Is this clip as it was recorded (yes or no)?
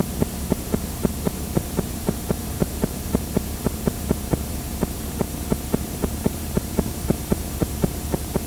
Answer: no